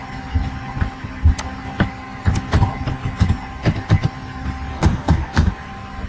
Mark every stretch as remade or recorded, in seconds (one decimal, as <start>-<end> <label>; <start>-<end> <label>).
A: 0.0-4.7 recorded; 4.7-5.5 remade; 5.5-6.1 recorded